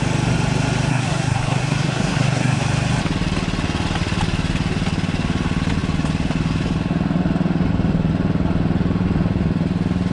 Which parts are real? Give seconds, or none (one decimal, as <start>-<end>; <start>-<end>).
0.0-0.9; 2.6-10.1

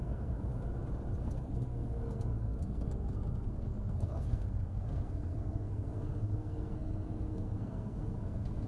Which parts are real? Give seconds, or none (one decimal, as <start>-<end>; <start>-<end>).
0.5-1.2

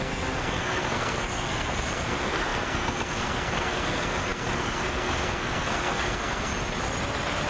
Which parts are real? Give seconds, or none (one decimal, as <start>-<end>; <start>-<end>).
6.5-7.5

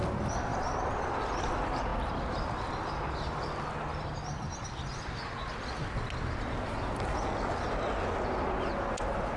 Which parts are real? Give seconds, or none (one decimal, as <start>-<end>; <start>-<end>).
0.0-9.4

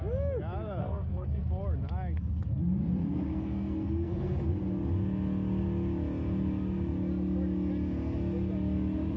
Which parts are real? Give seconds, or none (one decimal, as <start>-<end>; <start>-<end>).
0.0-0.8; 1.4-3.0; 4.5-9.2